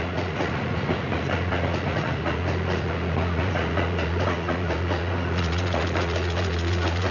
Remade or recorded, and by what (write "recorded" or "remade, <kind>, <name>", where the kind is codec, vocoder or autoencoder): remade, vocoder, Vocos